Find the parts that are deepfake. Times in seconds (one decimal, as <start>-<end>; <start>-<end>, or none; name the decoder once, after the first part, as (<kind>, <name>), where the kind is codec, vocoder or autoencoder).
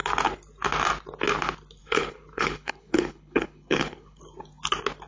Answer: 1.8-4.2 (codec, HILCodec)